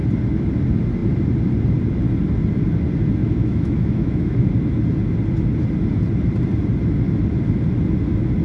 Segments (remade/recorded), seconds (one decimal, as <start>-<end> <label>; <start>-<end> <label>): 0.0-3.2 recorded; 3.2-4.5 remade; 4.5-8.4 recorded